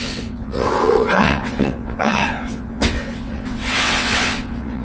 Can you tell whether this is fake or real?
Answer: fake